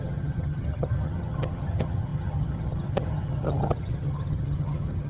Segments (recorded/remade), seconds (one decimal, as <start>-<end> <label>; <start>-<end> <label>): 0.0-5.1 remade